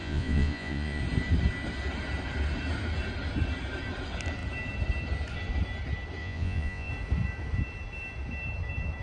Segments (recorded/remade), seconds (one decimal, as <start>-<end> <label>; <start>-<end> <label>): 0.0-1.0 remade; 1.0-6.2 recorded; 6.2-6.9 remade; 6.9-9.0 recorded